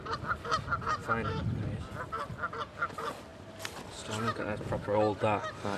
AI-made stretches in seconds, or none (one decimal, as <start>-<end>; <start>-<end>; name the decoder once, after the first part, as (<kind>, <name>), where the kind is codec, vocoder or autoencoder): none